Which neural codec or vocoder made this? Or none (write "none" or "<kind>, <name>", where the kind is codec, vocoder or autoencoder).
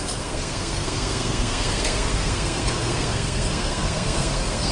codec, SNAC